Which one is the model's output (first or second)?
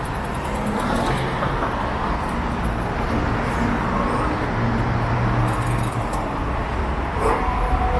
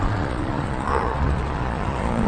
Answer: second